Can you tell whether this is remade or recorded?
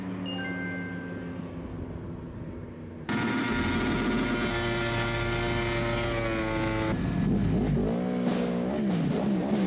recorded